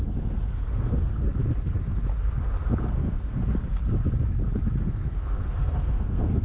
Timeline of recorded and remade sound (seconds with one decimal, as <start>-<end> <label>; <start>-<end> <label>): 0.0-1.4 remade; 1.4-2.9 recorded; 2.9-3.4 remade; 3.4-4.8 recorded; 4.8-6.4 remade